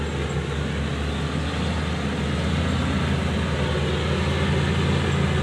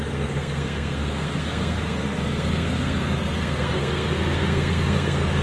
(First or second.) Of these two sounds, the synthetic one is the second